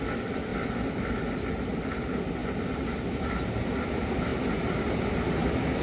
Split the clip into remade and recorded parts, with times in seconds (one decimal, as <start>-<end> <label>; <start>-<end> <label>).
0.0-5.8 recorded